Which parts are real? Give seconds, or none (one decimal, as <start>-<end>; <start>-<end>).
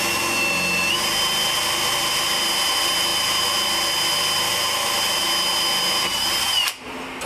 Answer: 0.0-7.3